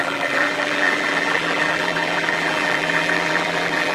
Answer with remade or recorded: remade